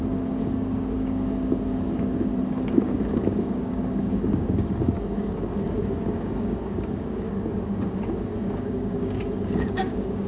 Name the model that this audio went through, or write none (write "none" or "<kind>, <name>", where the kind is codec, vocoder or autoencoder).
codec, DAC